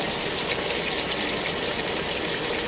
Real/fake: real